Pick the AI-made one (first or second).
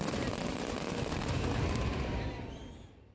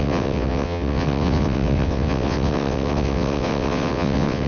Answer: second